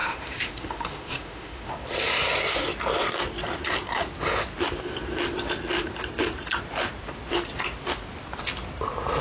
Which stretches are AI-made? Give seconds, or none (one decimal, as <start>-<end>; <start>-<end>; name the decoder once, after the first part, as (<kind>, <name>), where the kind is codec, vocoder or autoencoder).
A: 0.0-1.7 (autoencoder, DAC-VAE)